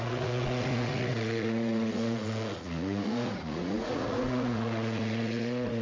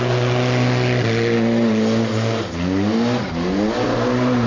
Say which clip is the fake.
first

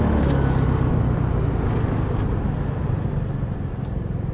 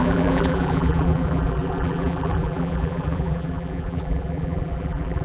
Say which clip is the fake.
second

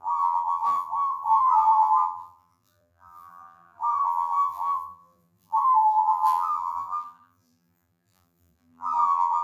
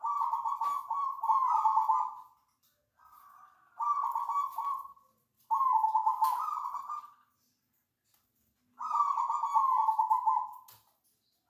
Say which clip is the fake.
first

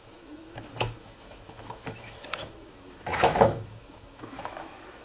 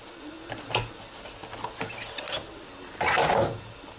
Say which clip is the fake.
first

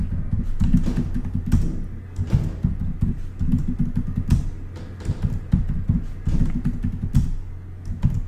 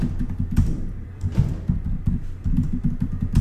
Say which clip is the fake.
second